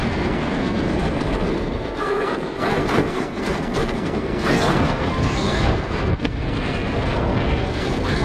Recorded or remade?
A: remade